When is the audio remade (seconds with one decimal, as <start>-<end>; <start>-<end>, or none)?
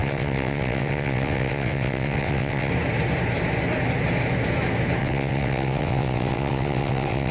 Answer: 0.0-2.7; 5.0-7.3